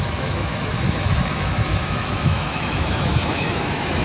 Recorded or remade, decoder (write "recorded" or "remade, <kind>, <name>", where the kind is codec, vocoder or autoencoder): remade, autoencoder, DAC-VAE